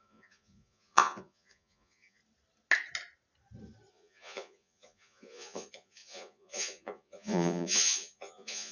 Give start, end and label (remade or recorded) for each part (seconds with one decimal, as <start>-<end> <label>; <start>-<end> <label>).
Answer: 0.0-2.2 remade; 2.2-3.9 recorded; 3.9-8.7 remade